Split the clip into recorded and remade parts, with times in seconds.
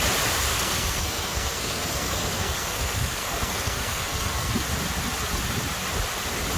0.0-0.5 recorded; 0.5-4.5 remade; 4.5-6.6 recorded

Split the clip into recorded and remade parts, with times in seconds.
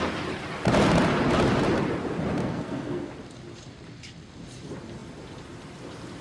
0.0-2.4 recorded; 2.4-3.1 remade; 3.1-6.2 recorded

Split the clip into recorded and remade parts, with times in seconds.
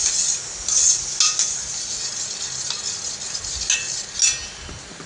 0.0-5.1 recorded